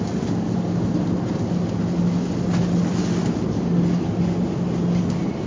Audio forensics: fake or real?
real